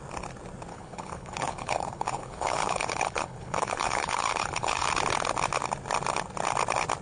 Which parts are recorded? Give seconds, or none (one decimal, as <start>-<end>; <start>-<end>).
0.0-0.7; 4.9-7.0